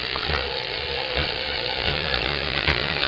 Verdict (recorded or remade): remade